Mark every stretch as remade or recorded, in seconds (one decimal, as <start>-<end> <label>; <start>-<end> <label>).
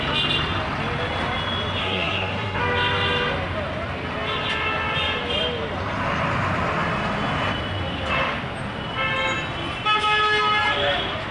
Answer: 0.0-1.8 recorded; 1.8-2.6 remade; 2.6-11.3 recorded